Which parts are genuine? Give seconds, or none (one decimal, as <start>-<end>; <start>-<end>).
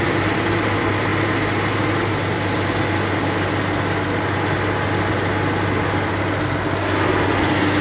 0.0-7.8